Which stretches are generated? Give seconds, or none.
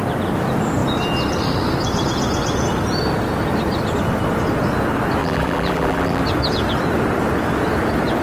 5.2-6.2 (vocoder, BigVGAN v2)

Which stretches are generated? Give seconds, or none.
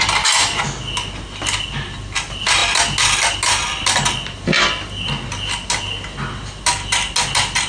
none